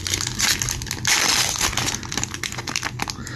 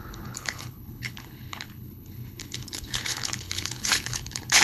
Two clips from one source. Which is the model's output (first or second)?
second